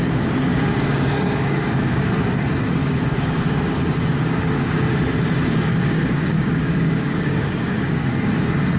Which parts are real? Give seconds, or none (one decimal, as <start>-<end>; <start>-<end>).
0.0-0.5; 2.1-2.8; 4.9-5.4; 8.1-8.8